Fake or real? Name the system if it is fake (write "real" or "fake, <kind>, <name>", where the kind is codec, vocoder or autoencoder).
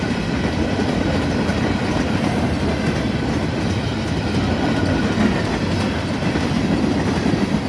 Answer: real